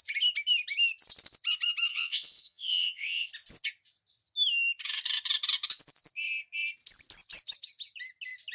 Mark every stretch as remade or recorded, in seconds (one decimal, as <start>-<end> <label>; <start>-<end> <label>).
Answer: 0.0-1.9 recorded; 1.9-3.3 remade; 3.3-8.5 recorded